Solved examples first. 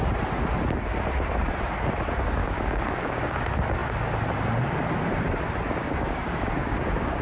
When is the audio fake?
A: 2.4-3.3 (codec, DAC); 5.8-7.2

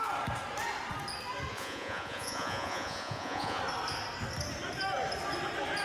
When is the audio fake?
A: 1.5-3.6 (vocoder, Vocos)

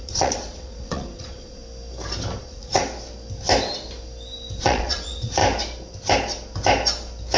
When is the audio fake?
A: 0.0-1.6 (vocoder, Vocos); 2.4-2.8; 4.6-5.4

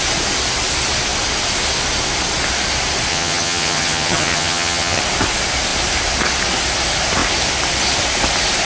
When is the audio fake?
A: 3.1-5.0 (vocoder, HiFi-GAN)

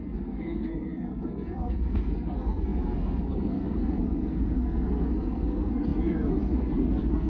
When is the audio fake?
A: 0.0-7.3 (codec, SNAC)

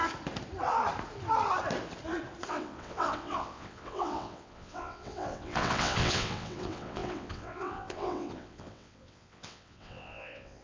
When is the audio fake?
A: 2.5-10.6 (vocoder, WaveNeXt)

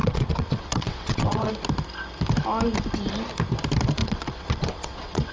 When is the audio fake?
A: 0.0-1.5 (vocoder, WaveNeXt); 4.0-5.3